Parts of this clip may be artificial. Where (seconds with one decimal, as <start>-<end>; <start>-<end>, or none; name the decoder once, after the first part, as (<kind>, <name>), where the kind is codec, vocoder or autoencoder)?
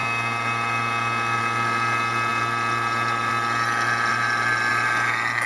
none